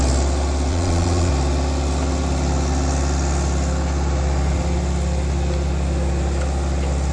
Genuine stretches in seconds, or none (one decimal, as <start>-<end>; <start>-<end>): 0.0-0.7; 1.3-7.1